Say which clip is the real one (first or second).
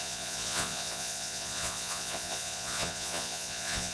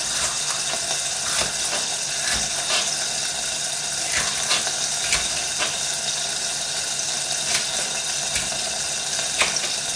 second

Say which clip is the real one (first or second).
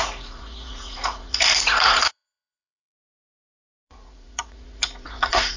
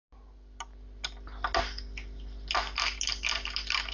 second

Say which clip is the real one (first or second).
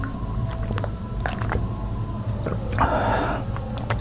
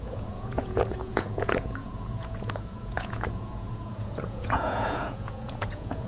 first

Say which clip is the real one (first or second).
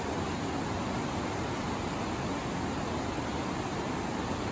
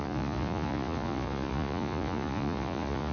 first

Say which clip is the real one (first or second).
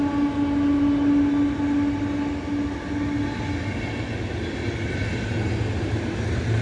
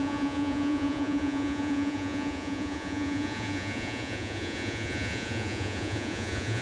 first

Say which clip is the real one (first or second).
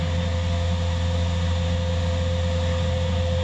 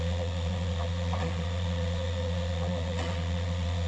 first